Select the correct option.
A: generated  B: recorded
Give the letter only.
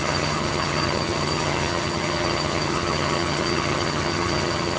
A